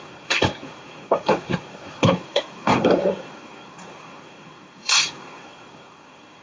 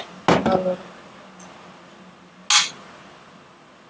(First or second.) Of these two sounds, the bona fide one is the second